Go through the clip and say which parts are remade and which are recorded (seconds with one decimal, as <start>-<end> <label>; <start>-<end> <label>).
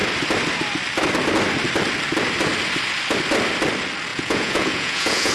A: 0.0-4.1 recorded; 4.1-5.3 remade